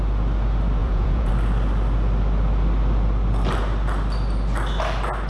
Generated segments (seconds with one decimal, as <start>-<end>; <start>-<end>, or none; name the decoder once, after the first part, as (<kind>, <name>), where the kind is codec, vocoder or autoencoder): 0.8-1.3 (vocoder, Vocos)